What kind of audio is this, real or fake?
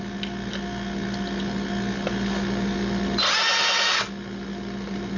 real